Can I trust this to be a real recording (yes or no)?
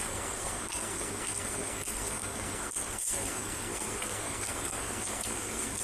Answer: no